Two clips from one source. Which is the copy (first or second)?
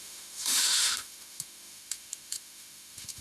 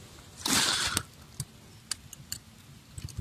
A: first